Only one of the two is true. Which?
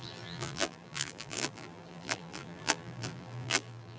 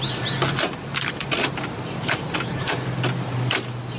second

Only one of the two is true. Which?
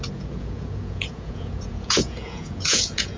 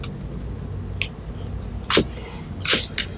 second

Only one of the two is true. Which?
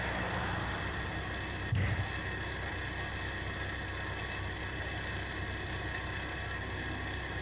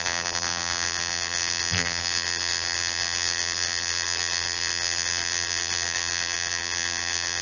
first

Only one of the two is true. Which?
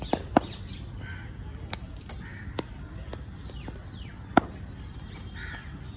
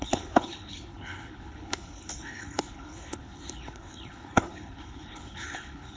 first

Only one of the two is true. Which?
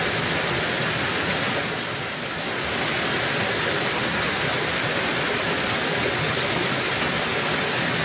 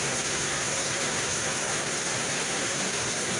first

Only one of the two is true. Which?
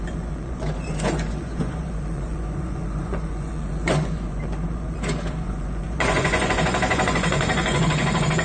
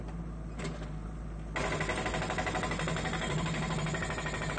second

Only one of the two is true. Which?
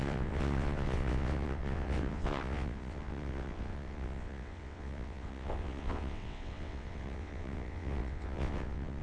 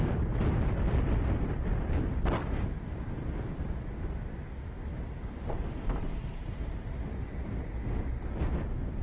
second